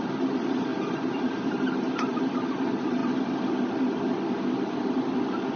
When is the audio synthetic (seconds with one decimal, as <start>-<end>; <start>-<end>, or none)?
0.0-3.0